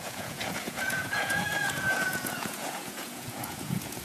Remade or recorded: remade